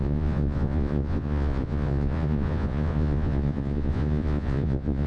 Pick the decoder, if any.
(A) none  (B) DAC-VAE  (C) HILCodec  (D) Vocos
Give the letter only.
D